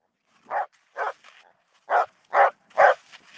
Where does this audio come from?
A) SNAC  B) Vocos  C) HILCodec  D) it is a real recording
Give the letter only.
D